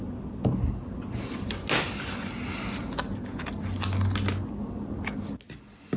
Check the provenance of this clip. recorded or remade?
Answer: recorded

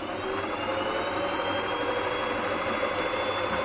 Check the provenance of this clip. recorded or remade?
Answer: recorded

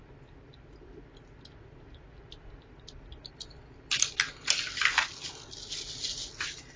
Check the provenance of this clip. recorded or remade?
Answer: recorded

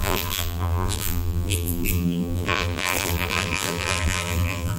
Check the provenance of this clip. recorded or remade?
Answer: remade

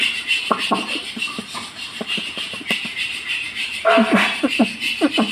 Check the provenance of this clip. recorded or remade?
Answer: remade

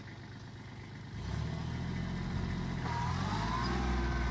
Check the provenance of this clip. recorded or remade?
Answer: recorded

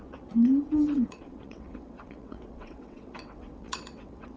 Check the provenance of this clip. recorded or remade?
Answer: remade